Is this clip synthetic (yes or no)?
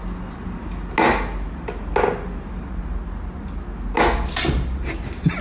no